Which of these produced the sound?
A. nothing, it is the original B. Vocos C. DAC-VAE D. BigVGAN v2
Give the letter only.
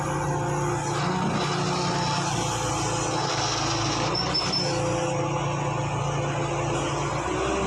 A